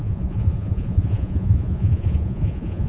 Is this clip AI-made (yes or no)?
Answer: yes